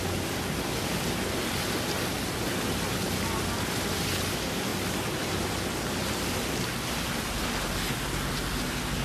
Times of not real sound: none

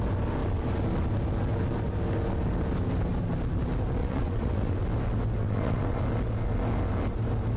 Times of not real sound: 4.0-4.8 (vocoder, WaveNeXt); 5.4-6.0

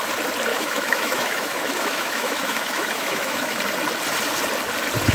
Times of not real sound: 0.5-3.6 (autoencoder, DAC-VAE)

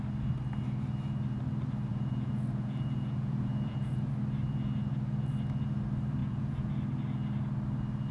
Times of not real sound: 1.9-4.1 (vocoder, Vocos); 6.2-6.7

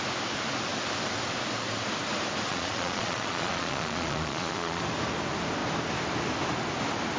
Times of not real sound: 2.5-4.8 (vocoder, Vocos)

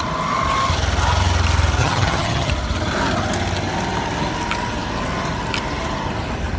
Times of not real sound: 1.8-2.5 (vocoder, HiFi-GAN)

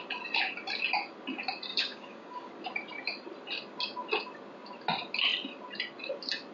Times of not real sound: 1.7-2.5 (codec, DAC)

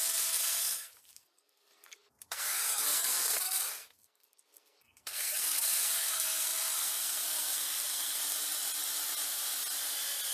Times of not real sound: 0.0-8.2 (codec, SNAC)